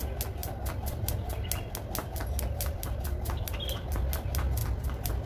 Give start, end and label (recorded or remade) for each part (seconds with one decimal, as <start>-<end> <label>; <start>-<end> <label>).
0.0-0.4 recorded; 0.4-1.1 remade; 1.1-2.0 recorded; 2.0-3.6 remade; 3.6-5.3 recorded